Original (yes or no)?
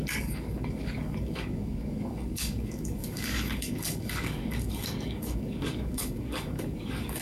no